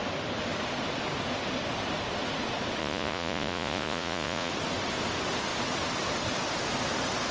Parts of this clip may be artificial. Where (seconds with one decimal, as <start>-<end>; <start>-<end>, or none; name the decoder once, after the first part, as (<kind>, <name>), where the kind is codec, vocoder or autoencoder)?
2.8-4.5 (vocoder, Vocos)